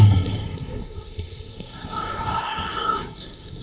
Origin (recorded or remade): remade